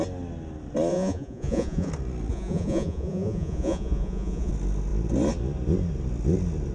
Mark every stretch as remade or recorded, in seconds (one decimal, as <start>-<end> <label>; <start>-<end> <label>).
0.0-0.9 recorded; 0.9-1.9 remade; 1.9-2.3 recorded; 2.3-4.5 remade; 4.5-6.7 recorded